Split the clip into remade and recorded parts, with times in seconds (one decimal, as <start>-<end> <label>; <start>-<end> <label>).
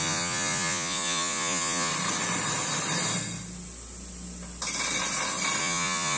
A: 0.0-1.9 remade; 1.9-5.6 recorded; 5.6-6.2 remade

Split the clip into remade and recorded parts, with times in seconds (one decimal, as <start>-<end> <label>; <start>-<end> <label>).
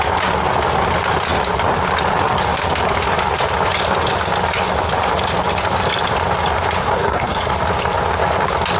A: 0.0-6.8 recorded; 6.8-7.4 remade; 7.4-8.8 recorded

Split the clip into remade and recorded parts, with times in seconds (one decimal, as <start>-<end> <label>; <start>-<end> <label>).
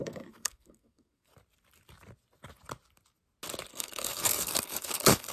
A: 0.0-1.3 remade; 1.3-3.7 recorded; 3.7-5.3 remade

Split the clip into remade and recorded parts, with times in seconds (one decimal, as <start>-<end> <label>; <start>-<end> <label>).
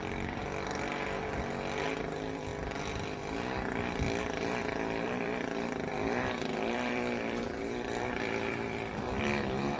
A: 0.0-0.4 remade; 0.4-2.0 recorded; 2.0-2.5 remade; 2.5-4.2 recorded; 4.2-9.8 remade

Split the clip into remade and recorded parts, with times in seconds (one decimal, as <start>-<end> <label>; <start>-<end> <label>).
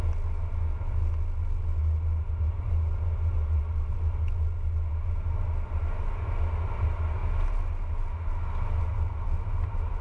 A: 0.0-10.0 recorded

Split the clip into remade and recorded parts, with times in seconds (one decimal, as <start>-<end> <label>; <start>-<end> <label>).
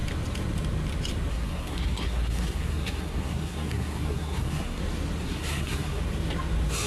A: 0.0-1.3 recorded; 1.3-4.8 remade; 4.8-5.2 recorded; 5.2-6.0 remade; 6.0-6.9 recorded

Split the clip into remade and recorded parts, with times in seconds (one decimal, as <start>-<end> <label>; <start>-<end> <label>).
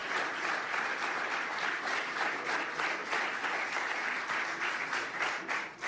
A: 0.0-5.9 recorded